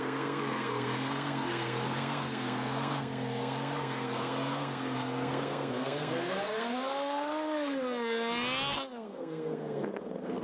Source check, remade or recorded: remade